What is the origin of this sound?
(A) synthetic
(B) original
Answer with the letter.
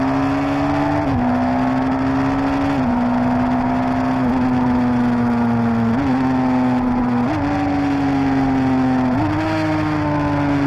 B